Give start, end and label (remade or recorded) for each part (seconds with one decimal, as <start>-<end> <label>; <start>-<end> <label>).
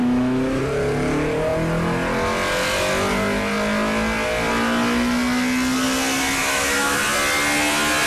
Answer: 0.0-0.6 remade; 0.6-6.4 recorded; 6.4-7.0 remade; 7.0-8.1 recorded